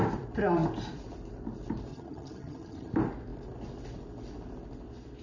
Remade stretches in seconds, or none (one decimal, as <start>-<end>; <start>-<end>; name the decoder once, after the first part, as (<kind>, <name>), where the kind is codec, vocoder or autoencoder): 1.9-2.9 (vocoder, HiFi-GAN)